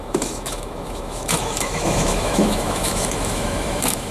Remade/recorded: remade